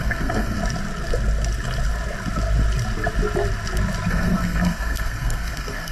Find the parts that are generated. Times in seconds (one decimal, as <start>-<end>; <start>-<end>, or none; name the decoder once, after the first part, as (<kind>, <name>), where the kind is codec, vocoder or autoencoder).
0.0-0.6 (codec, SNAC); 4.1-5.9